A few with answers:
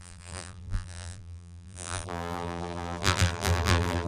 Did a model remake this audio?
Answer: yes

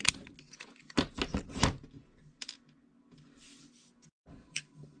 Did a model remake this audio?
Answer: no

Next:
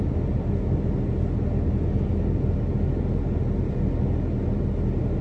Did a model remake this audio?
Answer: no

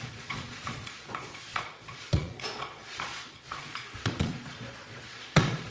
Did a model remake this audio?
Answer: yes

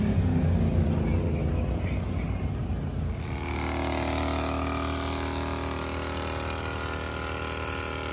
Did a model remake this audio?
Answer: no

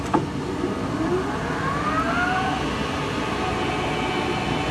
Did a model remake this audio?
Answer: no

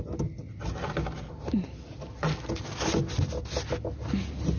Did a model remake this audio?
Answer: no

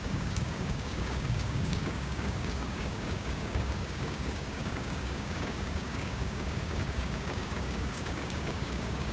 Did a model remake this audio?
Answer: yes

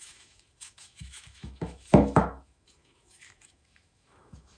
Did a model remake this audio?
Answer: yes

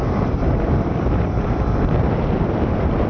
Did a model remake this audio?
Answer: yes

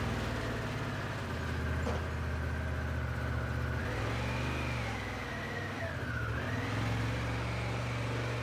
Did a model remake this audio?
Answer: no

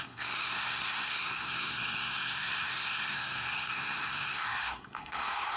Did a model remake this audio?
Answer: yes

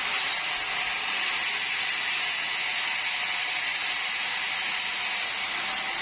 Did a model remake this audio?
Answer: no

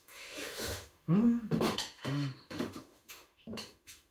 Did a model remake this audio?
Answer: yes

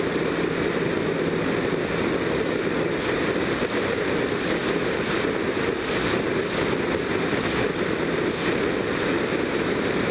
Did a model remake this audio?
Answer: no